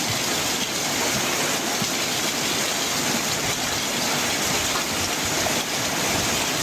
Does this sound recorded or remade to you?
recorded